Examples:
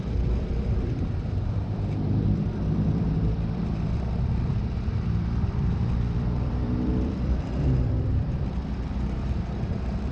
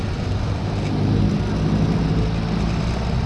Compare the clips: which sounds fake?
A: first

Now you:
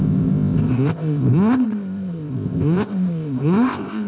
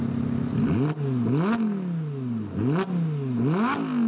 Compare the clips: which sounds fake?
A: first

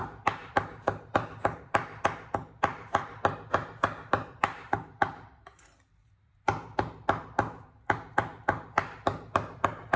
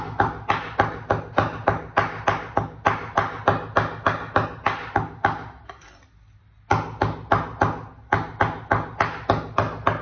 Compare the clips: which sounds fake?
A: first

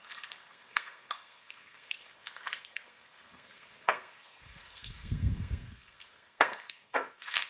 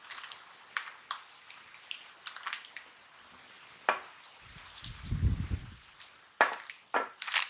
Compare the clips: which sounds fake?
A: first